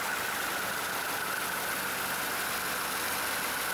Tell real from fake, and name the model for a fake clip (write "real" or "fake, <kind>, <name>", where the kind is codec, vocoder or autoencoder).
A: real